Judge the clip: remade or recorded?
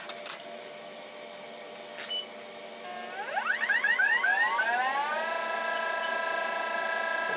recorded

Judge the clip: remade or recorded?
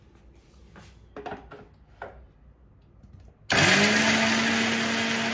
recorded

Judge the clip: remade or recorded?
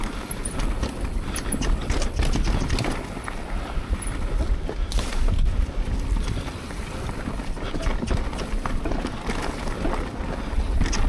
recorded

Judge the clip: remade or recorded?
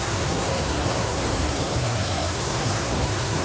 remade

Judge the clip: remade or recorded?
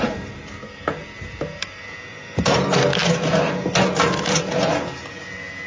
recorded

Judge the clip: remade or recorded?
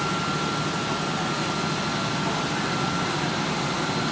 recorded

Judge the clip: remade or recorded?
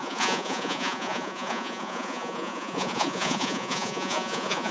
remade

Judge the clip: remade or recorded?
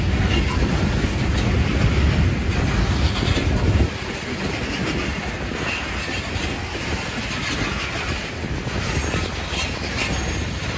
recorded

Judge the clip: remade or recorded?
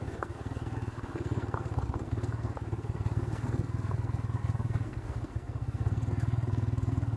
remade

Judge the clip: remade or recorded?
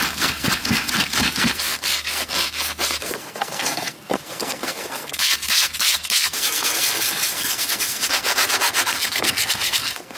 remade